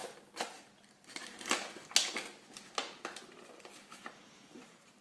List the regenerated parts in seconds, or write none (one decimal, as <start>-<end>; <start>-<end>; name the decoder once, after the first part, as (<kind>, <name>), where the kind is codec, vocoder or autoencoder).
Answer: 3.9-5.0 (vocoder, BigVGAN v2)